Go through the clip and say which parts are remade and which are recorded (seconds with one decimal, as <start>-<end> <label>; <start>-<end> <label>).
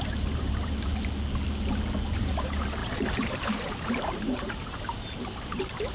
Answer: 0.0-0.9 remade; 0.9-2.1 recorded; 2.1-5.9 remade